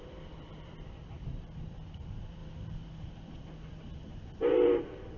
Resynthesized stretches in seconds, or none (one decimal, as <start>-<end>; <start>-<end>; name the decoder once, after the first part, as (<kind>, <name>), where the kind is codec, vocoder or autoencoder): 0.0-2.4 (vocoder, BigVGAN v2); 4.5-5.2